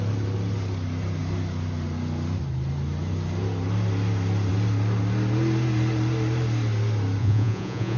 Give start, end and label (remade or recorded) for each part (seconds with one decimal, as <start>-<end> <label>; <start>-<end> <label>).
0.0-7.2 recorded; 7.2-8.0 remade